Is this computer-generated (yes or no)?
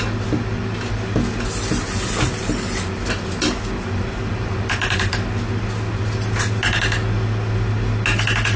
no